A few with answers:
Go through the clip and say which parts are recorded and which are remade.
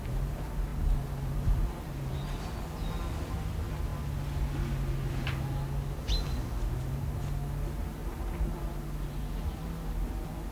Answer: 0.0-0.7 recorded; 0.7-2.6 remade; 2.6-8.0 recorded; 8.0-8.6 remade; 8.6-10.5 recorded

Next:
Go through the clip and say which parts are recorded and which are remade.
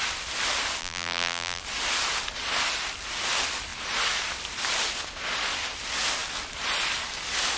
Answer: 0.0-0.8 recorded; 0.8-1.6 remade; 1.6-7.6 recorded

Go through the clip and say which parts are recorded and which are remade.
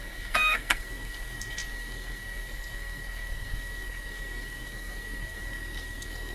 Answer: 0.0-6.3 remade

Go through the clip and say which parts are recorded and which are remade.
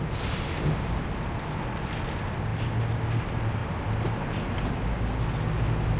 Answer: 0.0-6.0 recorded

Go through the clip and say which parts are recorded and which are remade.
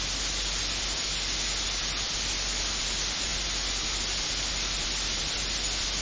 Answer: 0.0-6.0 recorded